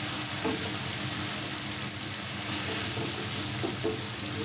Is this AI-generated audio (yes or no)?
no